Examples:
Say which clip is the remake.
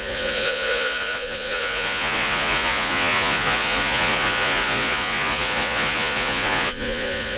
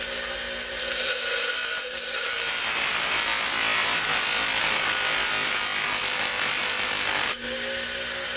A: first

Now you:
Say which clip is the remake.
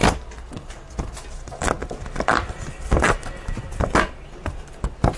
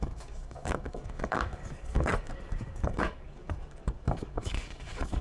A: second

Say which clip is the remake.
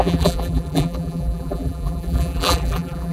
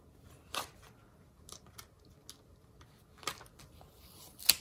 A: first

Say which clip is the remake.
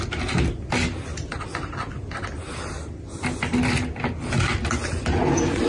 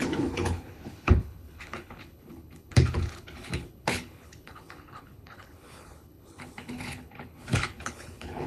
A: second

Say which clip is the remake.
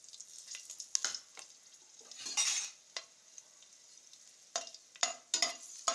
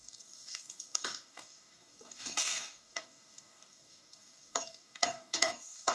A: second